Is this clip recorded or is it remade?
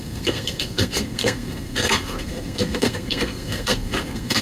remade